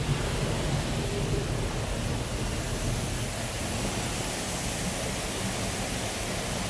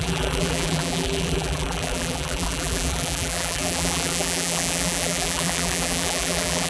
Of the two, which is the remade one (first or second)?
second